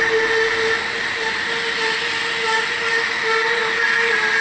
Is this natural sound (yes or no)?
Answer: yes